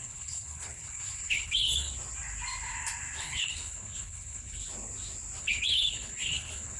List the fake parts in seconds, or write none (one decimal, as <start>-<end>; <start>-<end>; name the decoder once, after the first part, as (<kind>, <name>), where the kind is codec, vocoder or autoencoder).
0.0-1.9 (codec, HILCodec); 3.2-4.6; 5.4-6.8